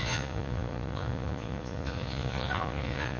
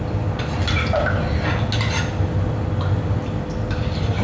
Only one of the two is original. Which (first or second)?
second